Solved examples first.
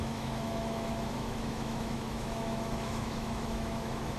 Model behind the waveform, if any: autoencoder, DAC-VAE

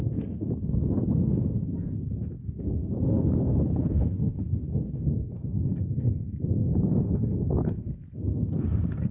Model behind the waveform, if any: codec, SNAC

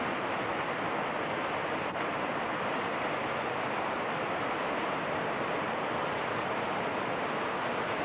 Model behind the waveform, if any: none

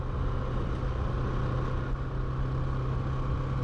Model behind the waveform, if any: none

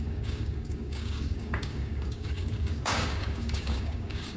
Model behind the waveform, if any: codec, DAC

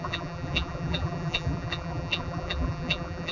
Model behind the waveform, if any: vocoder, BigVGAN v2